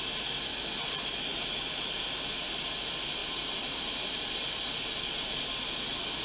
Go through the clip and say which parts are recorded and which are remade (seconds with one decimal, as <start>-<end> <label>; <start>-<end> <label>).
0.0-1.3 recorded; 1.3-2.1 remade; 2.1-3.2 recorded; 3.2-4.9 remade; 4.9-6.2 recorded